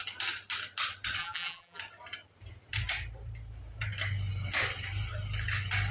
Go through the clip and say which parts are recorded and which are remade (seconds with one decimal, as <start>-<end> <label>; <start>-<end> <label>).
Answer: 0.0-1.2 recorded; 1.2-1.8 remade; 1.8-5.9 recorded